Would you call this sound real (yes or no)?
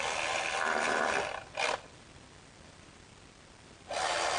no